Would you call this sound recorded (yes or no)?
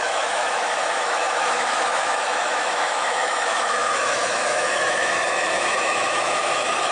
no